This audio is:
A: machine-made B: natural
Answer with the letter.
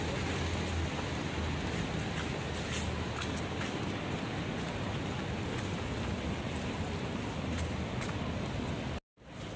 B